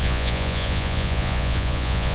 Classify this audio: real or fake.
fake